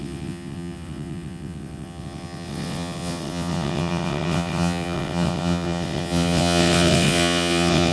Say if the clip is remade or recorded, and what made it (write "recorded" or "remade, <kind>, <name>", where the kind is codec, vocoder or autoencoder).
remade, vocoder, WaveNeXt